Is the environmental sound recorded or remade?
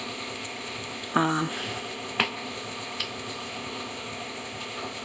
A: remade